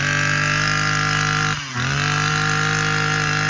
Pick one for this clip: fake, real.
real